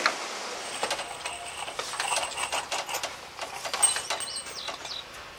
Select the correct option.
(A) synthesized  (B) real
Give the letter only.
B